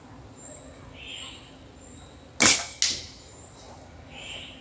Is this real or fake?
real